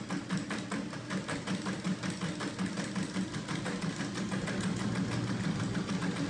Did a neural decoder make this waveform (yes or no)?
no